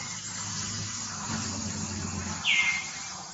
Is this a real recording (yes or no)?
yes